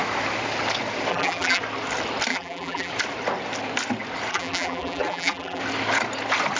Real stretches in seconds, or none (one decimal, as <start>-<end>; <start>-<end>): 0.0-1.1; 1.6-2.3; 2.9-4.3; 5.6-6.6